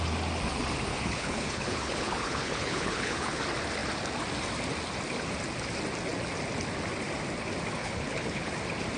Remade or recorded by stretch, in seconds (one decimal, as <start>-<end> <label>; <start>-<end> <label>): 0.0-0.9 recorded; 0.9-3.4 remade; 3.4-7.8 recorded; 7.8-8.5 remade; 8.5-9.0 recorded

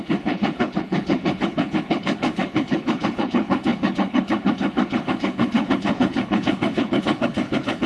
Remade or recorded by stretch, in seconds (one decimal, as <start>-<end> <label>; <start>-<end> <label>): 0.0-7.9 remade

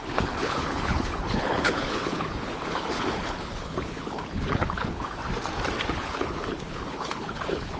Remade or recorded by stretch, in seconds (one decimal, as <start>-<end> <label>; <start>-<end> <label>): 0.0-5.2 remade; 5.2-5.9 recorded; 5.9-7.8 remade

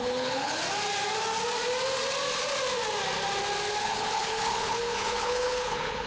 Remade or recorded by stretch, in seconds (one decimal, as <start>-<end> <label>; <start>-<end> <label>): 0.0-0.6 remade; 0.6-3.8 recorded; 3.8-6.1 remade

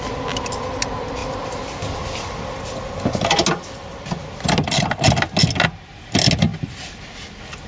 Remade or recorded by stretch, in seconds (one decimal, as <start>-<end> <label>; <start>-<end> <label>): 0.0-7.7 recorded

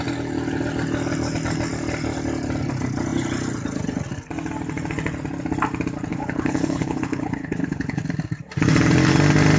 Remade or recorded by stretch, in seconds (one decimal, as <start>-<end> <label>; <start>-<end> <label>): 0.0-6.1 recorded; 6.1-8.0 remade; 8.0-9.6 recorded

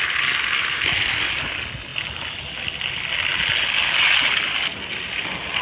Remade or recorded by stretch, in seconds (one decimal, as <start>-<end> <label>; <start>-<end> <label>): 0.0-5.6 recorded